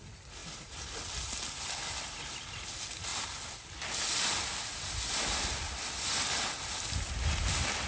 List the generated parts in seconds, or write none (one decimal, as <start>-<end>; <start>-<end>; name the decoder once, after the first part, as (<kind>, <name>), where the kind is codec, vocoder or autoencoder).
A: none